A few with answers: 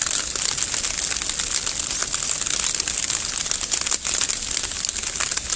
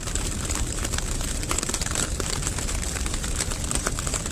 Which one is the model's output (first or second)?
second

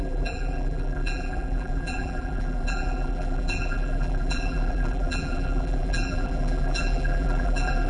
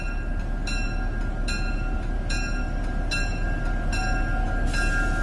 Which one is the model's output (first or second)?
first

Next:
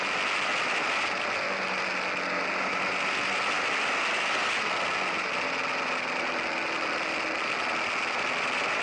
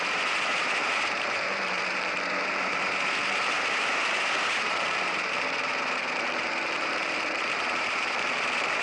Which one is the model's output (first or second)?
second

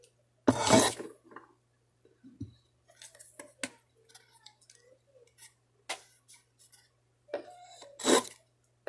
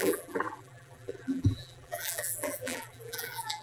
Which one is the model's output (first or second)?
second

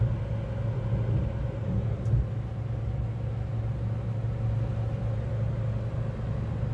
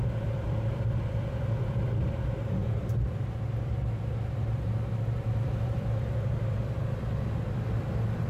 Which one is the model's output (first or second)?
second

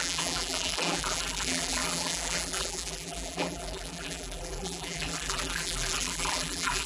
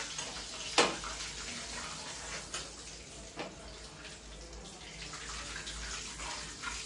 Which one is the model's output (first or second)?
first